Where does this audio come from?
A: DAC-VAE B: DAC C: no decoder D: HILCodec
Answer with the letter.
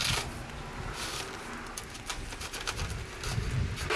C